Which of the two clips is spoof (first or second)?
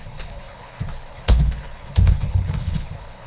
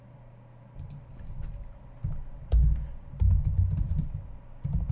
first